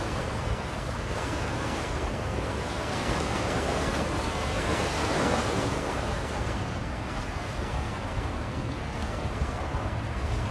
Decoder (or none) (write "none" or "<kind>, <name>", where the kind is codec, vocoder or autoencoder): codec, SNAC